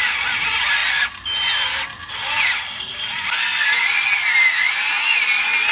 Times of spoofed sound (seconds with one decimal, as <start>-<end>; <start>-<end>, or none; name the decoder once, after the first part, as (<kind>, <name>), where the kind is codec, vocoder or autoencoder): none